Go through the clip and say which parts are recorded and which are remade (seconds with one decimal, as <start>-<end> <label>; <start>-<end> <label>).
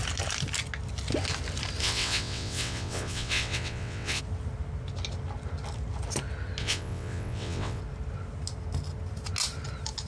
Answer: 0.0-1.8 recorded; 1.8-4.2 remade; 4.2-6.6 recorded; 6.6-7.8 remade; 7.8-10.1 recorded